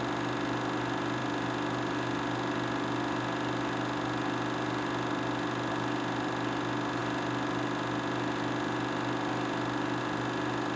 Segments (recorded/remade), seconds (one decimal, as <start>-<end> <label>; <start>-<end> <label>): 0.0-10.8 recorded